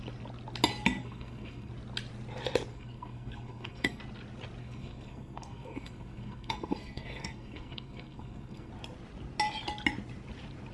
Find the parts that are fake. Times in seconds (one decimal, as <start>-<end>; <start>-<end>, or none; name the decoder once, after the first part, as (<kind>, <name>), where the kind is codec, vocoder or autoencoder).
1.0-1.7 (codec, SNAC); 2.7-4.0; 4.6-8.7